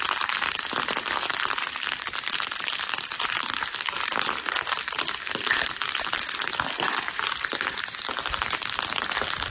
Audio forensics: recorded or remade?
recorded